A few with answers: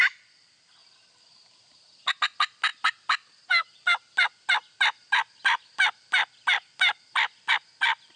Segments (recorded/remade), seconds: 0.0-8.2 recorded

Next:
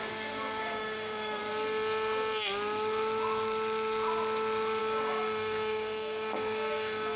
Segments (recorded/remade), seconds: 0.0-0.6 recorded; 0.6-1.4 remade; 1.4-4.8 recorded; 4.8-7.2 remade

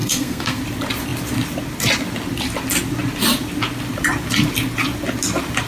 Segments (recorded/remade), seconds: 0.0-0.6 remade; 0.6-5.7 recorded

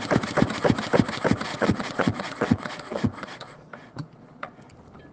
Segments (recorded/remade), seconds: 0.0-1.5 recorded; 1.5-4.6 remade; 4.6-5.1 recorded

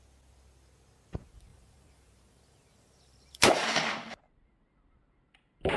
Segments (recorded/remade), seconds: 0.0-1.5 recorded; 1.5-4.2 remade; 4.2-5.8 recorded

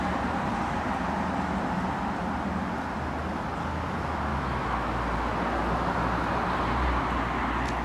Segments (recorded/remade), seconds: 0.0-4.3 recorded; 4.3-4.9 remade; 4.9-7.8 recorded